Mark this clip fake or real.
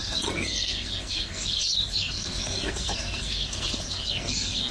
fake